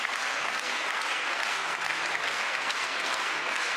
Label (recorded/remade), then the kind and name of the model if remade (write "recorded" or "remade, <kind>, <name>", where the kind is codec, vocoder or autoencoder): remade, codec, SNAC